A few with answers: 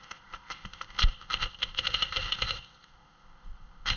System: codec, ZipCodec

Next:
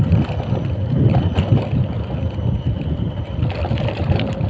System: none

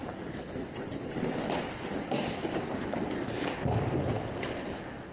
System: none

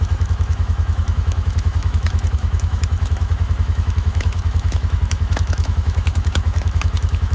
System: autoencoder, DAC-VAE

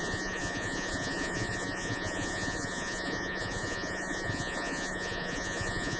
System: vocoder, Vocos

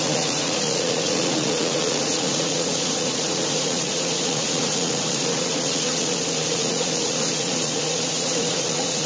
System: vocoder, Vocos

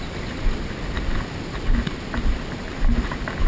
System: none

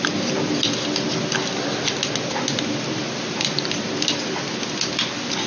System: none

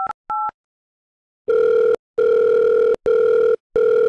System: none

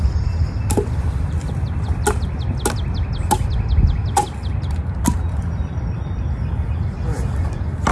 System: none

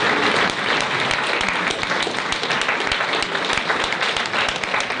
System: none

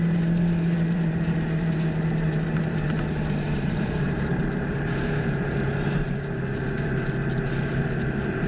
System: vocoder, BigVGAN v2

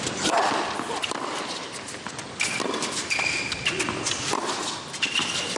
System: none